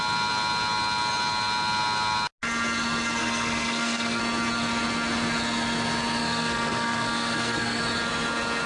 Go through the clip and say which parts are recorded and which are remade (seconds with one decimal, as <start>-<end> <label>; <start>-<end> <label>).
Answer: 0.0-3.2 recorded; 3.2-4.2 remade; 4.2-6.2 recorded; 6.2-7.8 remade; 7.8-8.7 recorded